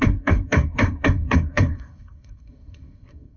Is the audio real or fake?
fake